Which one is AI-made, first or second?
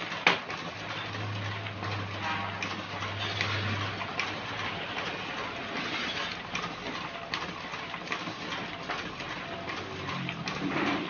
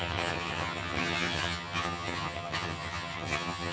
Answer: second